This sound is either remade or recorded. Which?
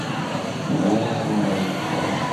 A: recorded